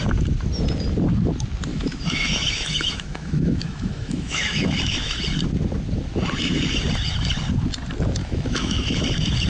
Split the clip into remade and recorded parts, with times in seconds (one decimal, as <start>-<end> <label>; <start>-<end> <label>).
0.0-1.7 recorded; 1.7-5.2 remade; 5.2-8.2 recorded; 8.2-9.0 remade; 9.0-9.5 recorded